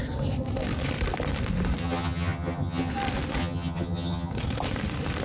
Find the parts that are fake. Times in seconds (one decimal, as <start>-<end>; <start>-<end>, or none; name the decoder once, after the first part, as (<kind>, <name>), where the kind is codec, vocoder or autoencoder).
1.8-2.9 (vocoder, HiFi-GAN); 3.4-4.3